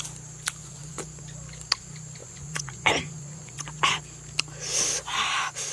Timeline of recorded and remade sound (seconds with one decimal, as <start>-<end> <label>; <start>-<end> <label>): 0.0-0.6 recorded; 0.6-1.2 remade; 1.2-2.2 recorded; 2.2-4.0 remade; 4.0-5.7 recorded